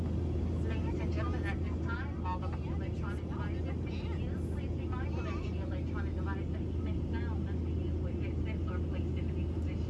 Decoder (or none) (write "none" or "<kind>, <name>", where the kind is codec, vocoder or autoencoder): none